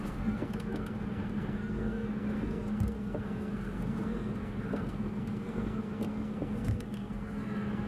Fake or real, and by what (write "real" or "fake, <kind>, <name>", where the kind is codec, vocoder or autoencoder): fake, codec, SNAC